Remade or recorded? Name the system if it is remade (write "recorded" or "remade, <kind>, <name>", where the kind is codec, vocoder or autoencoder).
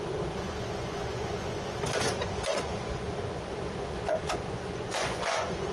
remade, vocoder, Vocos